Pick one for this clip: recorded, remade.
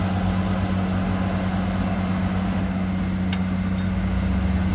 recorded